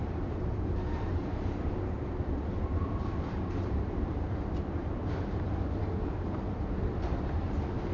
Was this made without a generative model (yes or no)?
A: no